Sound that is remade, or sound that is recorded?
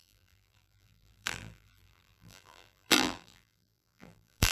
remade